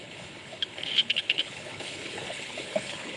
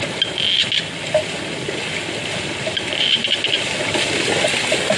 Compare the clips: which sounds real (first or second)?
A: second